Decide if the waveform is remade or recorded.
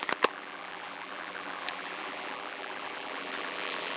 remade